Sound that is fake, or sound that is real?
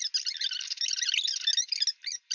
real